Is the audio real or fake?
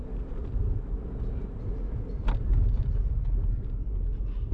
real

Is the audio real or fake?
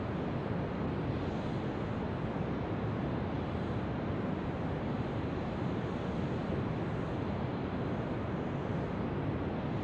fake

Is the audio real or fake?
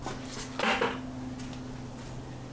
real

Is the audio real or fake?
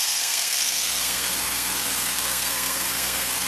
fake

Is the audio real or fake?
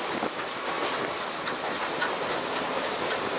real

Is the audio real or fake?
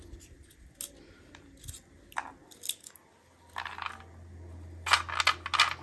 real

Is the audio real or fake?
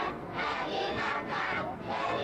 fake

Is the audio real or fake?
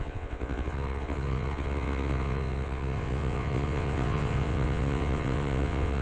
fake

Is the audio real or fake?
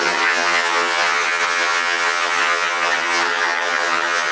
fake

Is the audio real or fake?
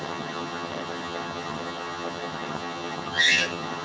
fake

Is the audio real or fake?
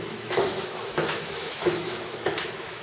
fake